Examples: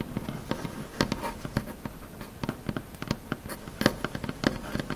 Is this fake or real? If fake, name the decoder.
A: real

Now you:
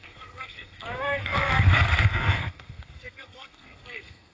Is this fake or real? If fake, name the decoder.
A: fake, codec, SNAC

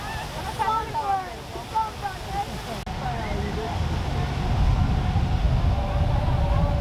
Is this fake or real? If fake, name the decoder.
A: real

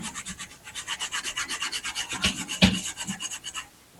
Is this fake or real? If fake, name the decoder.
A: real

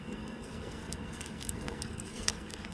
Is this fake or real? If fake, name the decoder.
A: fake, codec, SNAC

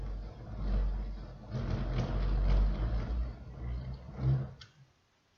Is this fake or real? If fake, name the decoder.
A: real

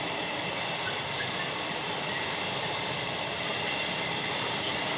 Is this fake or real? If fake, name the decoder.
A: real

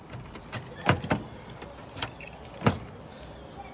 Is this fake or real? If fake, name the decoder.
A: real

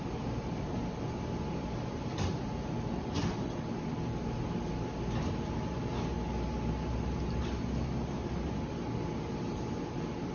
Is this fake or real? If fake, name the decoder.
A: real